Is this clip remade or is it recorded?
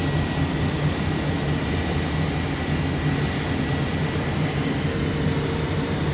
remade